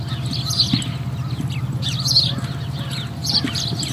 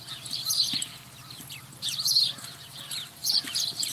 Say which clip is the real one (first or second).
first